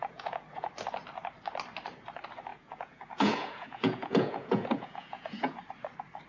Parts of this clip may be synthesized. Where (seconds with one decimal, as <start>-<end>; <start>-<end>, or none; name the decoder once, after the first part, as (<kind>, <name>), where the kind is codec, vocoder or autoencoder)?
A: 0.0-0.7 (vocoder, Vocos); 2.5-5.6